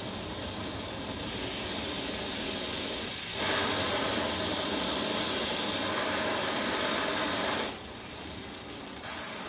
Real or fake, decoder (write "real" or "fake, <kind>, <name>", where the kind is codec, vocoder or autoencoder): real